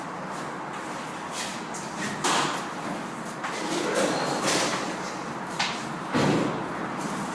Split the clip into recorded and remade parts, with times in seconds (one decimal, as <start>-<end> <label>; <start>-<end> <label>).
0.0-7.3 recorded